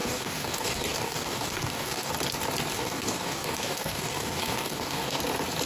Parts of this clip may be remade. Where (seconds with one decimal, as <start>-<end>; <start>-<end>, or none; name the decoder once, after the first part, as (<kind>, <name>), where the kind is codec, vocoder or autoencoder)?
0.0-2.1 (codec, DAC); 2.7-5.2